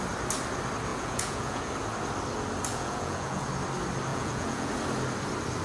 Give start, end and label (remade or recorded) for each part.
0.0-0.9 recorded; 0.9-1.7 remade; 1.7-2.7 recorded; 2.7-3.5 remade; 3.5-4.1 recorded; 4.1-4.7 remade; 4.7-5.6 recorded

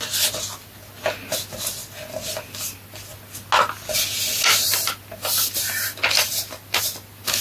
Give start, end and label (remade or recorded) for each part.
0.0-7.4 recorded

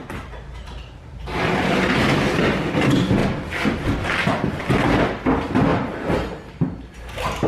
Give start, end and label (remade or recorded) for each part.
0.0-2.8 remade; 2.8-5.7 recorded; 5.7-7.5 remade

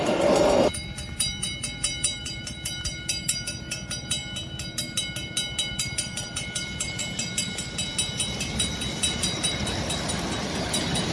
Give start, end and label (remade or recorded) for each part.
0.0-4.2 remade; 4.2-5.7 recorded; 5.7-7.0 remade; 7.0-8.4 recorded; 8.4-11.1 remade